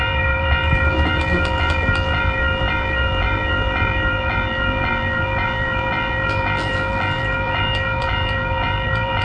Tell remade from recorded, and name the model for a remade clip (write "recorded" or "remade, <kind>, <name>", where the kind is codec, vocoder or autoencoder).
remade, vocoder, BigVGAN v2